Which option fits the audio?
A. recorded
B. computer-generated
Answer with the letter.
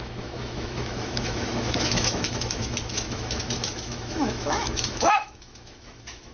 B